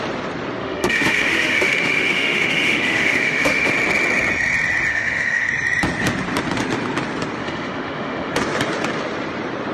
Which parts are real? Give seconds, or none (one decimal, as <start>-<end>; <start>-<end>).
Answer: 0.0-0.6; 3.7-4.9; 5.5-7.4; 8.3-9.7